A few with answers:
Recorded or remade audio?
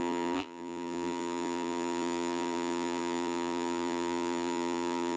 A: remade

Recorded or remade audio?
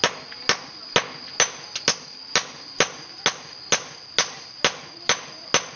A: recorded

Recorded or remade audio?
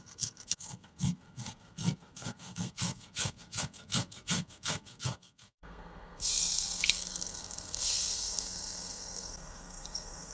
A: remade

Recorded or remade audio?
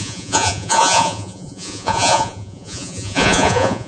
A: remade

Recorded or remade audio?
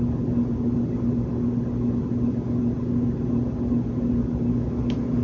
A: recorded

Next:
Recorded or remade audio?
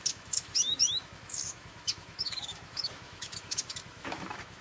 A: remade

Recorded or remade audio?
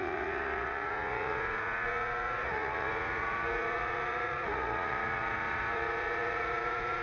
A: remade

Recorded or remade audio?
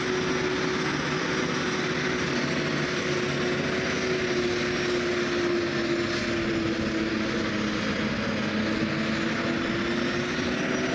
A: recorded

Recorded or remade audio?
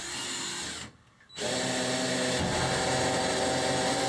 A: recorded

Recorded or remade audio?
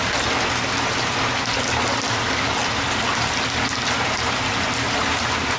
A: recorded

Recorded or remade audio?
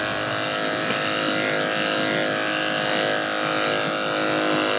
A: recorded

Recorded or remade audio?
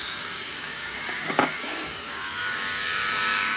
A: remade